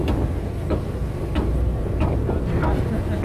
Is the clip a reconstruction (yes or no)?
no